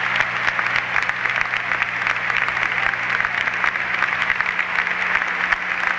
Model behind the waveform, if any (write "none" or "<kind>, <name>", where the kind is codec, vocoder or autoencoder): none